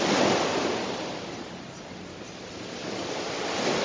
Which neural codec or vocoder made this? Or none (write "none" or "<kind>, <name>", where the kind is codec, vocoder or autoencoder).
none